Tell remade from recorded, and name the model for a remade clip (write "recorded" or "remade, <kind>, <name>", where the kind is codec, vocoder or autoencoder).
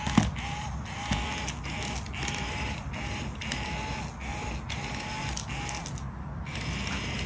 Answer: recorded